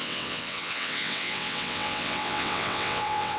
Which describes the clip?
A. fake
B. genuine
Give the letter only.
A